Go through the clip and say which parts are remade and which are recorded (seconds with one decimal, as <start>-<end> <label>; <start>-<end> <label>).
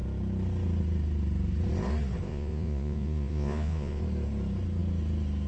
0.0-2.3 recorded; 2.3-4.0 remade; 4.0-5.5 recorded